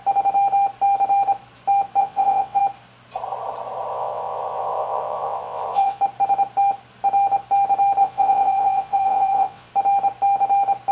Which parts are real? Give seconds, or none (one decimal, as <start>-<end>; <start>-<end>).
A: 0.0-2.0; 2.6-3.9; 6.0-8.0; 9.7-10.9

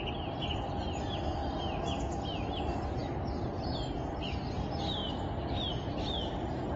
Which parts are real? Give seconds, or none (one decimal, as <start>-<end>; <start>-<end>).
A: 0.0-6.8

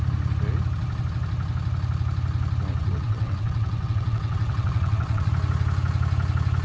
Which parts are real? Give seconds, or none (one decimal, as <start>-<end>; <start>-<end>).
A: 0.0-2.8; 5.3-6.6

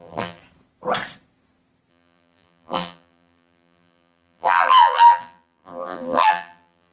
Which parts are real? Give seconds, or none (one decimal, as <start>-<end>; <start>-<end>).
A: 0.4-1.9

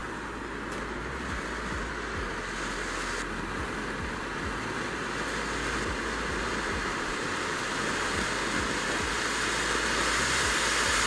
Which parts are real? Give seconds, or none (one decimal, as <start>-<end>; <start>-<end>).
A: 0.0-6.9; 7.6-11.1

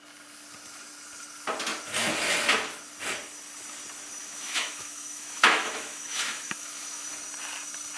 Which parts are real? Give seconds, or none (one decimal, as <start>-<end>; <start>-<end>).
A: 0.0-4.2; 7.1-8.0